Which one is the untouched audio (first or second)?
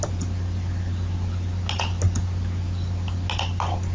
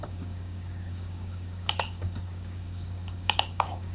first